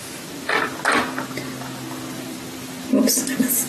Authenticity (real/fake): real